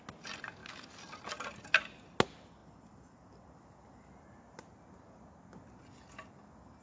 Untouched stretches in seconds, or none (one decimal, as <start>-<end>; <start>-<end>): 0.0-6.8